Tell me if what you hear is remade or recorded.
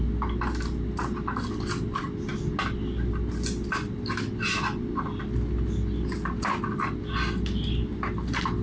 recorded